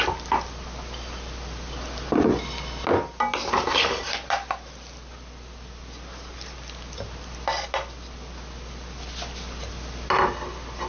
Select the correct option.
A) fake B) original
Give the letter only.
B